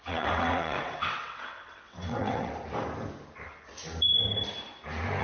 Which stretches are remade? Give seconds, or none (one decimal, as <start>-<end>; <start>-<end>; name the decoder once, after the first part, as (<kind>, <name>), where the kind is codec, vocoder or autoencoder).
0.0-2.5 (vocoder, WaveNeXt)